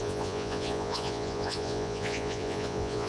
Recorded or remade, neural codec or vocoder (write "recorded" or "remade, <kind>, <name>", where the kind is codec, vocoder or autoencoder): remade, vocoder, Vocos